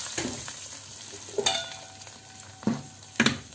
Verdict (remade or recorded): recorded